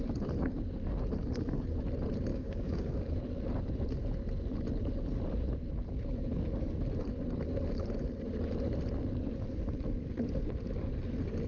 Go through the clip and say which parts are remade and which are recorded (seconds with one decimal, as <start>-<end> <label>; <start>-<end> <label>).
0.0-2.3 recorded; 2.3-3.1 remade; 3.1-11.5 recorded

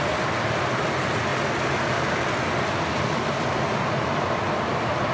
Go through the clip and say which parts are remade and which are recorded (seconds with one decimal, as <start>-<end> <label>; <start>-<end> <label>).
0.0-5.1 recorded